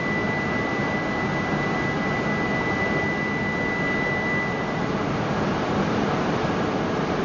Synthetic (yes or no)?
no